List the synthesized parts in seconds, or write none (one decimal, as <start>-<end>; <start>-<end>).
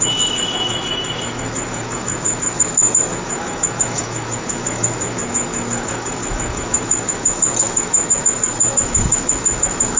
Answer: 0.0-10.0